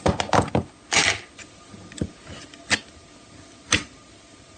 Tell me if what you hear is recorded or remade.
recorded